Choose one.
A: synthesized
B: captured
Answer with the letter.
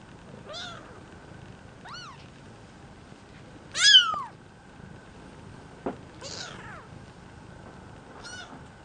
B